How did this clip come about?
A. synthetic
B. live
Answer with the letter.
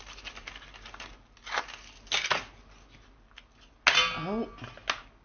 B